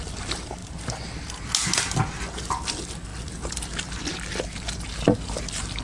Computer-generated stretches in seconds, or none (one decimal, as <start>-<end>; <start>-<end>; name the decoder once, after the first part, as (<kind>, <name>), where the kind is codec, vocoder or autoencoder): none